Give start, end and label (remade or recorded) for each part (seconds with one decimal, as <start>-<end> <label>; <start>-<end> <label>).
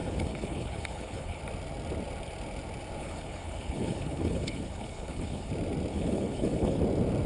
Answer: 0.0-1.4 remade; 1.4-3.0 recorded; 3.0-5.5 remade; 5.5-5.9 recorded; 5.9-6.8 remade; 6.8-7.3 recorded